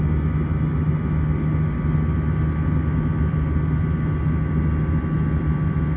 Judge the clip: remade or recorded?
recorded